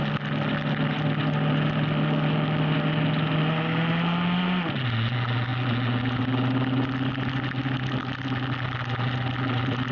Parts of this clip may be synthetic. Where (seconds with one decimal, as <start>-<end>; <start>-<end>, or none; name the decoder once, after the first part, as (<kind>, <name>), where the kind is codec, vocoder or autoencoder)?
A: none